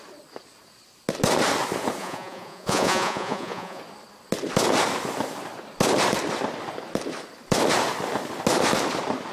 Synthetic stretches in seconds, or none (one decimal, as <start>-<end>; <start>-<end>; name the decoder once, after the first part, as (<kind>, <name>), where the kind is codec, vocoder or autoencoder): 2.0-3.8 (vocoder, Vocos)